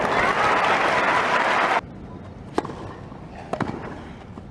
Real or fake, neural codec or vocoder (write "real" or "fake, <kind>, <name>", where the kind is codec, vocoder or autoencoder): real